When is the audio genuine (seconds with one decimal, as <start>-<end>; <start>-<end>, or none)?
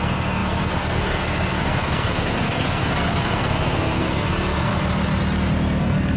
4.7-5.8